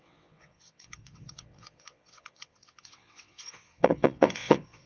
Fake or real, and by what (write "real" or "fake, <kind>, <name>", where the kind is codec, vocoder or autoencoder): fake, vocoder, WaveNeXt